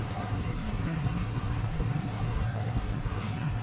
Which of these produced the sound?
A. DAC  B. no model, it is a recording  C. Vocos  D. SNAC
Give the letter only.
D